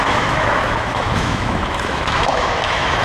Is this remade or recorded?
remade